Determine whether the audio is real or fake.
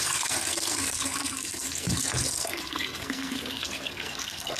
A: fake